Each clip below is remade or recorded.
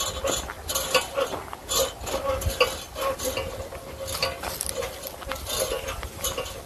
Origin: recorded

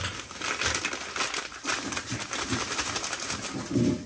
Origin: recorded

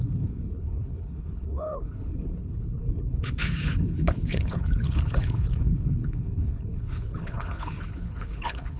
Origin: remade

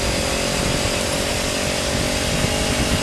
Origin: recorded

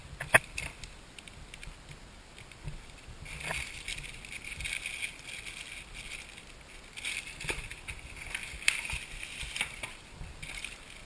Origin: recorded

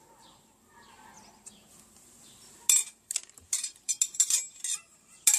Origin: recorded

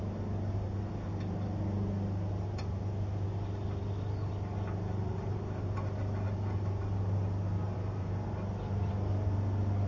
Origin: recorded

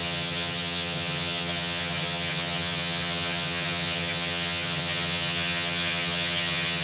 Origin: remade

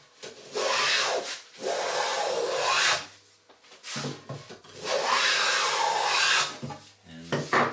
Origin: recorded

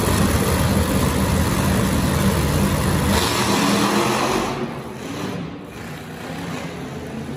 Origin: recorded